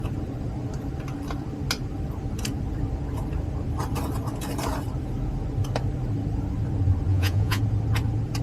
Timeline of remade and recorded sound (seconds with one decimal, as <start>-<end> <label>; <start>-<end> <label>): 0.0-7.1 recorded; 7.1-7.6 remade; 7.6-8.4 recorded